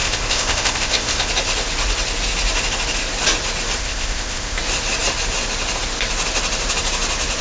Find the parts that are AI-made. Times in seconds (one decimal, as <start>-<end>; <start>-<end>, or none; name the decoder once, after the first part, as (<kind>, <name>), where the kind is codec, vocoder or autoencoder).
0.0-1.3 (codec, ZipCodec); 3.8-4.6